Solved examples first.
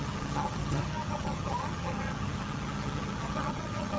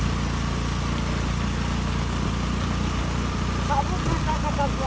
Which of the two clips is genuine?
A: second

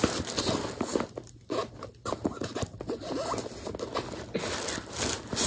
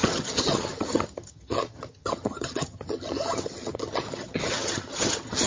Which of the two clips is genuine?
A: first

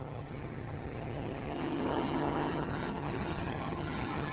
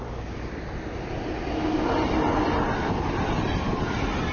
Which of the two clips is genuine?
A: second